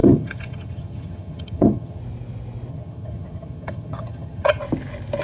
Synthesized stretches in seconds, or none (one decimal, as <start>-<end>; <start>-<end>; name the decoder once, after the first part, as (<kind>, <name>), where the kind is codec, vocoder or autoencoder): 0.0-2.0 (vocoder, HiFi-GAN); 2.7-4.6